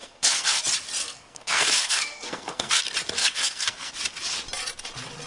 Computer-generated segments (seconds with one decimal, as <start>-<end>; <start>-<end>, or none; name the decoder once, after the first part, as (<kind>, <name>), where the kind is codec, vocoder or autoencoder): 0.0-0.6 (codec, SNAC); 1.0-2.8; 3.2-3.9